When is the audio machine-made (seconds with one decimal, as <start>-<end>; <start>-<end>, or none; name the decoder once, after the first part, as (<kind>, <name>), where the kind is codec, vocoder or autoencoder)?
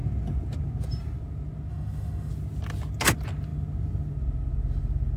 1.7-2.3 (autoencoder, DAC-VAE)